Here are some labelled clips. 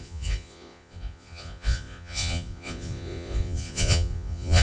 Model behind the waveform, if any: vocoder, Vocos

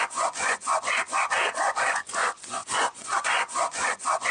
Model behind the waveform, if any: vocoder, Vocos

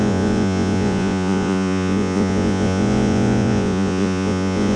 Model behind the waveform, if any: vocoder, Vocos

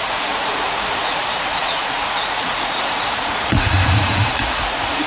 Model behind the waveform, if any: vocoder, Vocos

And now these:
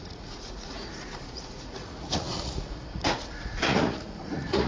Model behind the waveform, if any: vocoder, Vocos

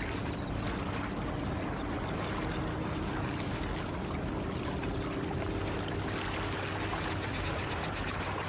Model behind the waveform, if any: none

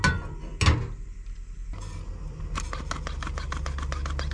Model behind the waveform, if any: none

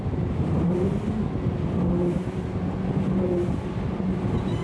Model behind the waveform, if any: none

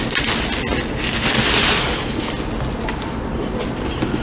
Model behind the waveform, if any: none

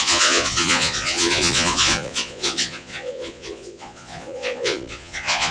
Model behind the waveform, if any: vocoder, Vocos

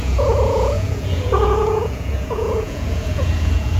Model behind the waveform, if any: vocoder, Vocos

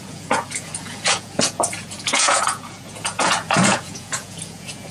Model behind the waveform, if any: vocoder, Vocos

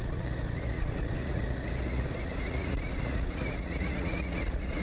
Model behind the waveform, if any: vocoder, Vocos